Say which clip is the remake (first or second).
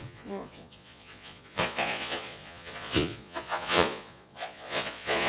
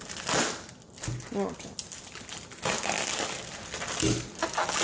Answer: first